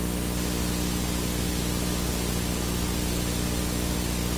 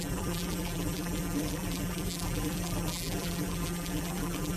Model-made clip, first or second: second